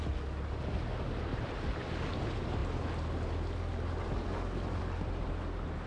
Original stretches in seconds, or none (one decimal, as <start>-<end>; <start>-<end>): 0.0-1.3; 2.1-5.9